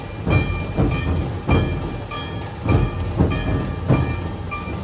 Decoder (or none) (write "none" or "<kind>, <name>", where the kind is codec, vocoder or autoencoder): none